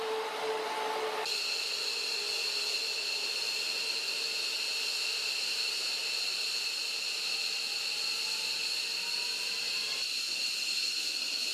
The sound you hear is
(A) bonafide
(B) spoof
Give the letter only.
A